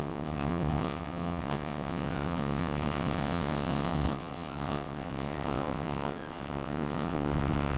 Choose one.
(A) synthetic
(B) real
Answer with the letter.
A